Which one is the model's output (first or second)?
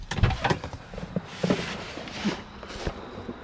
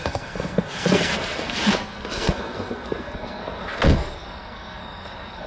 second